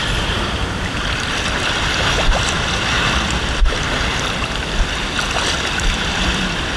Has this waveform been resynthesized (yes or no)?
yes